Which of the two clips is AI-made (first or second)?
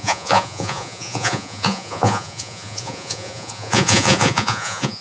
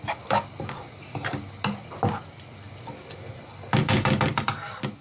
first